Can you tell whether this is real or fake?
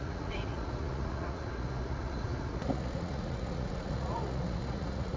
fake